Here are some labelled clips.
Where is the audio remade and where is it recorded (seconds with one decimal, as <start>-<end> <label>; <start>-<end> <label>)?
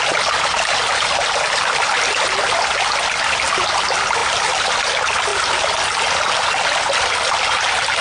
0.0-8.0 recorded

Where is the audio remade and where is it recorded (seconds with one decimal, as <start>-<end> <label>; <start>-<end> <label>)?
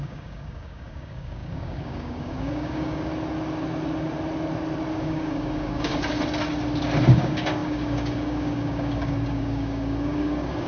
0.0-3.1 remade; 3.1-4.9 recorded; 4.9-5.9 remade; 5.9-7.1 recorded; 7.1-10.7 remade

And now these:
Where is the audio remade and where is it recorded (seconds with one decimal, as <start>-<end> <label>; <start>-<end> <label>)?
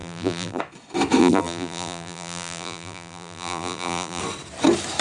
0.0-0.6 remade; 0.6-1.2 recorded; 1.2-4.2 remade; 4.2-5.0 recorded